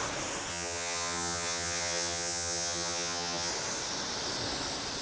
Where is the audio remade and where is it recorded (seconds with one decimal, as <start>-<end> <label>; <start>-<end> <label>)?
0.0-0.5 recorded; 0.5-3.5 remade; 3.5-5.0 recorded